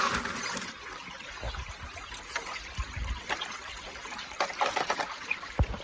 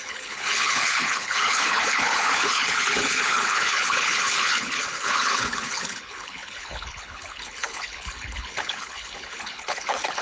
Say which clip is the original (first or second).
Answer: first